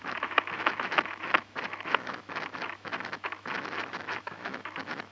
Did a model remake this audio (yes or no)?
yes